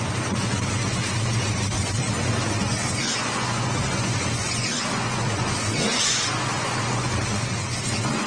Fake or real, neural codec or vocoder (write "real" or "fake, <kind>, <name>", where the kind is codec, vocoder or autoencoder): fake, vocoder, Vocos